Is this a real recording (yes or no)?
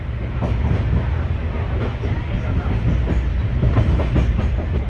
yes